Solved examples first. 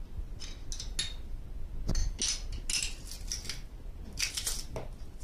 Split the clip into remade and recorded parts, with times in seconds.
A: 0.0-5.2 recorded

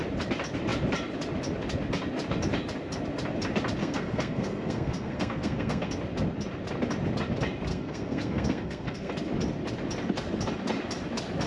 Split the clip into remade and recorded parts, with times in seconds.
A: 0.0-3.8 recorded; 3.8-5.9 remade; 5.9-7.7 recorded; 7.7-9.1 remade; 9.1-11.5 recorded

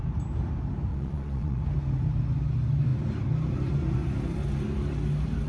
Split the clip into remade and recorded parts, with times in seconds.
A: 0.0-0.9 recorded; 0.9-1.6 remade; 1.6-5.5 recorded

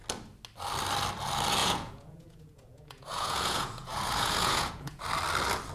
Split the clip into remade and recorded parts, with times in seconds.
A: 0.0-1.6 recorded; 1.6-5.0 remade; 5.0-5.7 recorded

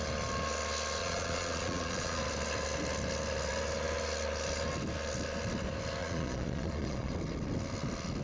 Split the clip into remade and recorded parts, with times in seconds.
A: 0.0-1.0 recorded; 1.0-2.2 remade; 2.2-6.0 recorded; 6.0-7.1 remade; 7.1-8.2 recorded

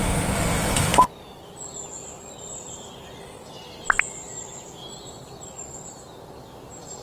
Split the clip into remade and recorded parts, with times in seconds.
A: 0.0-7.0 recorded

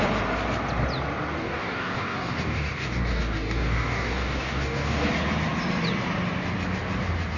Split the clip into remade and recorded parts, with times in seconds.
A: 0.0-1.4 recorded; 1.4-5.1 remade; 5.1-7.4 recorded